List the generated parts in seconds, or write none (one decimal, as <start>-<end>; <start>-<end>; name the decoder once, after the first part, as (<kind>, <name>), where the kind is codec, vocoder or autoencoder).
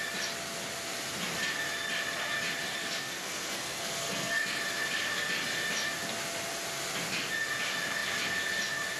2.8-4.6 (codec, SNAC)